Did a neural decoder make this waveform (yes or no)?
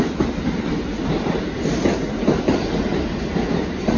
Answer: no